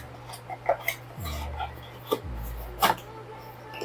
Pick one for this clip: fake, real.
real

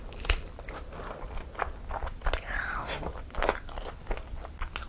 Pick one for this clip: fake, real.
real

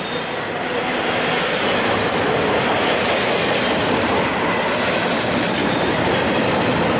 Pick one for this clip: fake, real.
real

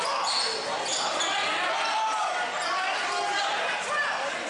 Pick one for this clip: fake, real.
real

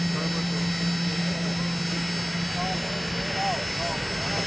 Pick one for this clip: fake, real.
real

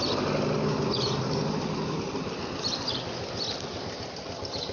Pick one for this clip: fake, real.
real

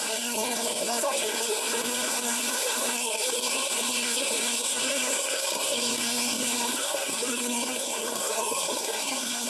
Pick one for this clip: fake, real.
fake